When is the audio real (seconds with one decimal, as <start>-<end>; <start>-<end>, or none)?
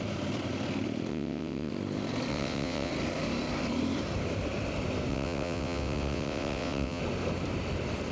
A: 0.0-1.1; 1.7-2.3; 2.9-5.1; 7.0-8.1